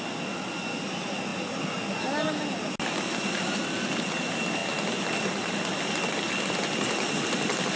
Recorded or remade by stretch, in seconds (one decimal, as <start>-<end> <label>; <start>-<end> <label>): 0.0-7.8 recorded